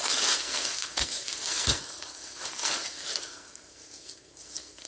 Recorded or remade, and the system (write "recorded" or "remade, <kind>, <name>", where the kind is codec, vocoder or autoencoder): remade, codec, SNAC